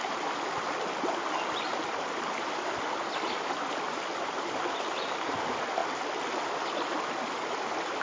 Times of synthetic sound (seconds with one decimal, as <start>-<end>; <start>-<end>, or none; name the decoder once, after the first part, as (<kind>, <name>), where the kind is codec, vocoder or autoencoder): none